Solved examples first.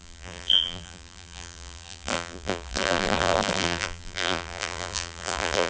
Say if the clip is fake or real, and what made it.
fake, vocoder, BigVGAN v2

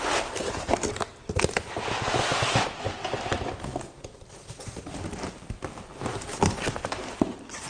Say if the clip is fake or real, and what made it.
real